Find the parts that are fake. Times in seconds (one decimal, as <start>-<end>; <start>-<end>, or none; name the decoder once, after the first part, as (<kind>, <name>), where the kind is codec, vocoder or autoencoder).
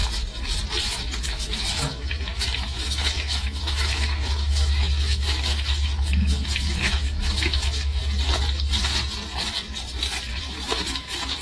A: 0.8-8.0 (autoencoder, DAC-VAE); 10.4-11.4